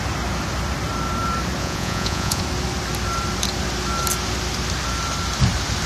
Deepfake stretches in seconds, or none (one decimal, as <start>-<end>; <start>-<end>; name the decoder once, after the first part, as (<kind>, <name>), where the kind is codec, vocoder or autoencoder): 1.6-2.4 (vocoder, Vocos)

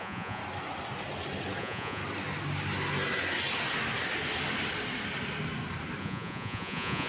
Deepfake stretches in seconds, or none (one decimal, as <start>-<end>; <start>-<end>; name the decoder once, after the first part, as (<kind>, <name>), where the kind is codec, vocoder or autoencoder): 0.0-0.4 (vocoder, Vocos); 1.6-2.0; 6.0-7.1